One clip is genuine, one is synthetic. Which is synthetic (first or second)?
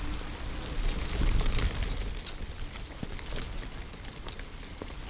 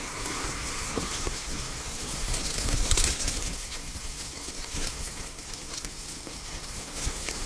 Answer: second